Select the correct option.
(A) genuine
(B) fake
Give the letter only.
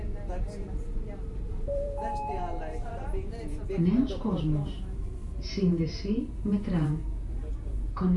B